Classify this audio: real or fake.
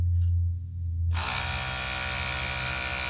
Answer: real